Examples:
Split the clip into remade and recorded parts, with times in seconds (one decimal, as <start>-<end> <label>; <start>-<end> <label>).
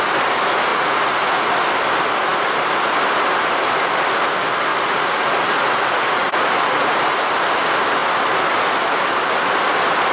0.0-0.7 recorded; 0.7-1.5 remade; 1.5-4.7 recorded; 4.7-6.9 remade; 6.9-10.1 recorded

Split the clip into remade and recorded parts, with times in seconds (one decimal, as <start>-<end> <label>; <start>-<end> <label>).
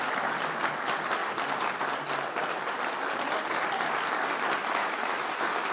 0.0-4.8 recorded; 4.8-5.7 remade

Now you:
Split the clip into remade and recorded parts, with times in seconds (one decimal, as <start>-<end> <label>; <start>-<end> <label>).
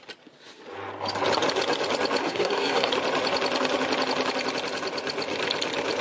0.0-2.2 recorded; 2.2-2.9 remade; 2.9-6.0 recorded